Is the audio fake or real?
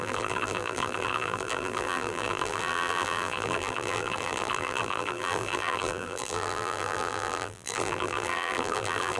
fake